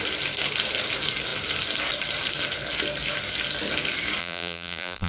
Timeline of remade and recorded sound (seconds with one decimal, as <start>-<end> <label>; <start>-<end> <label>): 0.0-4.2 recorded; 4.2-5.1 remade